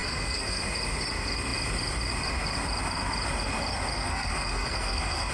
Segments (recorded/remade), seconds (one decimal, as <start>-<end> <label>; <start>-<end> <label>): 0.0-0.6 remade; 0.6-3.9 recorded; 3.9-5.3 remade